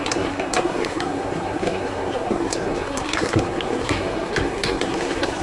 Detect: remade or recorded remade